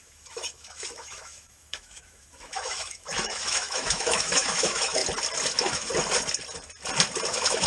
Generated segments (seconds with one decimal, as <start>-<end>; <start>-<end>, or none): 0.0-5.0; 5.5-5.9; 7.3-7.7